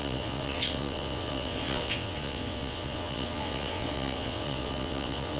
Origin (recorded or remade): remade